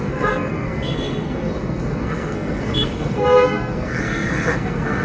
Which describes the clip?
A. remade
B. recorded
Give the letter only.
A